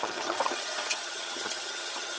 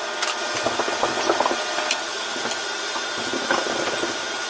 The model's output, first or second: first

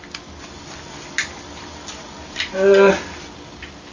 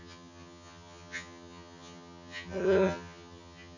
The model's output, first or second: second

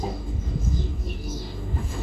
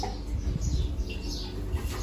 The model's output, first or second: first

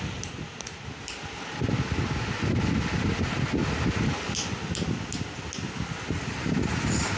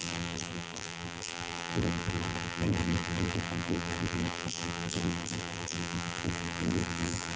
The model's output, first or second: second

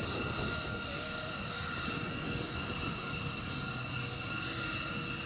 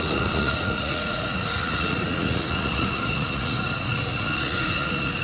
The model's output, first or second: second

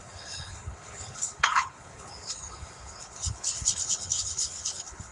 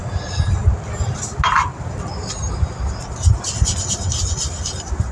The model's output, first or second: first